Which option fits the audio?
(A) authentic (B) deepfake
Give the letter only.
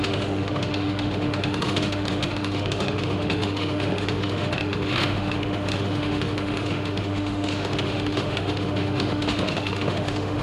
B